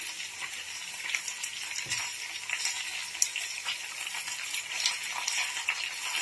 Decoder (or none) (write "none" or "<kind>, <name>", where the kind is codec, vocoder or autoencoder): none